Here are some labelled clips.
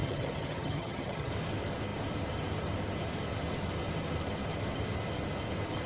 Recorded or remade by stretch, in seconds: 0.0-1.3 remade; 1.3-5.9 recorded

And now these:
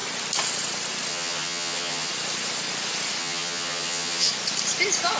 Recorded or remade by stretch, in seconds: 0.0-1.1 recorded; 1.1-2.1 remade; 2.1-3.2 recorded; 3.2-4.3 remade; 4.3-5.2 recorded